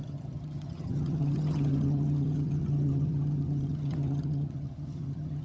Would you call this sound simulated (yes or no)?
yes